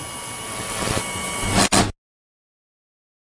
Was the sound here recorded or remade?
recorded